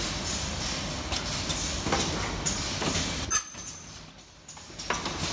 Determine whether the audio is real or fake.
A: real